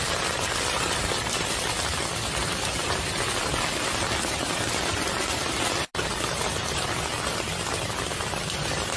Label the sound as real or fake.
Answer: real